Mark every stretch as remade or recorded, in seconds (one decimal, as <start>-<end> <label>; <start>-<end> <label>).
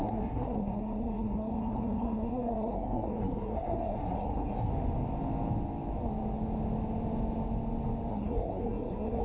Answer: 0.0-4.7 remade; 4.7-8.1 recorded; 8.1-9.2 remade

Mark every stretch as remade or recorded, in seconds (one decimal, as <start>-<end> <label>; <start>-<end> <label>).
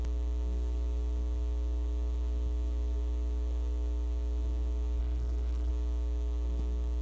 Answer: 0.0-5.0 recorded; 5.0-5.7 remade; 5.7-7.0 recorded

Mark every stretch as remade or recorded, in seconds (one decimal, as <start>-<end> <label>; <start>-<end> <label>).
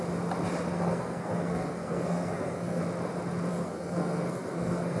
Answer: 0.0-0.7 recorded; 0.7-2.8 remade; 2.8-3.5 recorded; 3.5-5.0 remade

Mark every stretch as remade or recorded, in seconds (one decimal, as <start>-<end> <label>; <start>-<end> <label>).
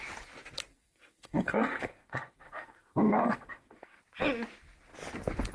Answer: 0.0-0.7 recorded; 0.7-4.0 remade; 4.0-5.5 recorded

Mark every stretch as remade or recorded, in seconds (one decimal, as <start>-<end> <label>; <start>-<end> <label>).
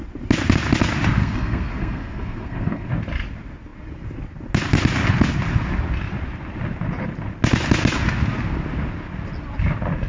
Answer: 0.0-1.2 recorded; 1.2-2.9 remade; 2.9-10.1 recorded